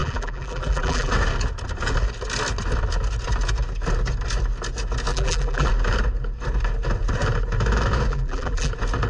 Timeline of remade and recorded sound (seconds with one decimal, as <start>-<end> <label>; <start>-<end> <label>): 0.0-1.1 remade; 1.1-5.1 recorded; 5.1-5.7 remade; 5.7-8.1 recorded; 8.1-8.7 remade; 8.7-9.1 recorded